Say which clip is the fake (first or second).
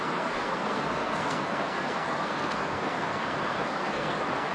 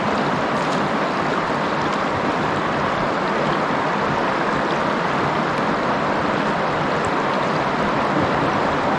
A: first